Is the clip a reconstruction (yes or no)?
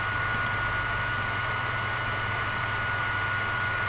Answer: no